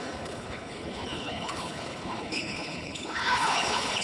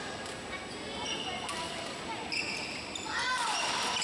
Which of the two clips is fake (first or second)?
first